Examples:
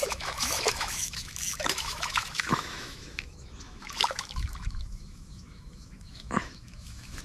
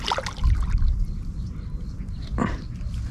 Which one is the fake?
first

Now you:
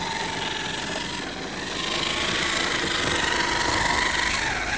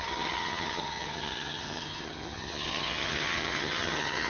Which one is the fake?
second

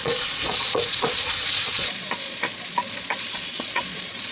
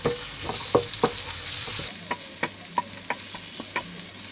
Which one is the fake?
first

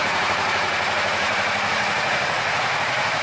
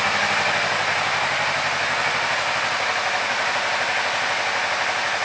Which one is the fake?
first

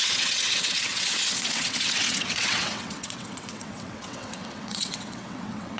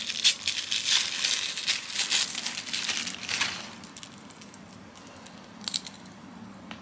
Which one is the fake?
first